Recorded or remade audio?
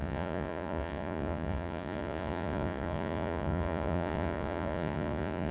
remade